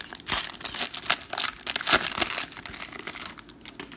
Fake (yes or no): no